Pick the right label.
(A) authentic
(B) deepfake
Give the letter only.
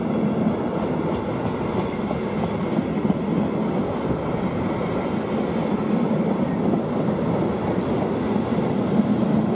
A